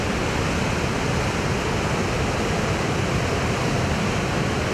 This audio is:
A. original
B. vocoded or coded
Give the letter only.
A